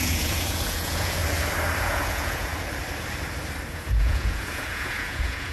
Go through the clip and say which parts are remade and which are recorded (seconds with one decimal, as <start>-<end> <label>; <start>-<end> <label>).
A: 0.0-1.2 remade; 1.2-1.8 recorded; 1.8-2.5 remade; 2.5-3.7 recorded; 3.7-5.5 remade